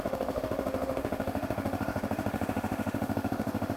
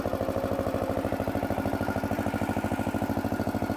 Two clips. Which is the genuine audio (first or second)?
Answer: second